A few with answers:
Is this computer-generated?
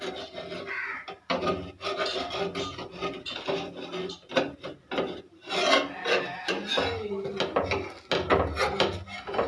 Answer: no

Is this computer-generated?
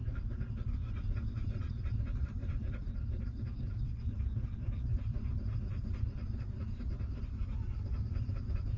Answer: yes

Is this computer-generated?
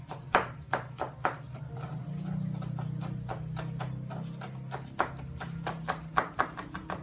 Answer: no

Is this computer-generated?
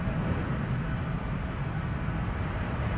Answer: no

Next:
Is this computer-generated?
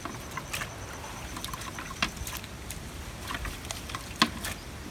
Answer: no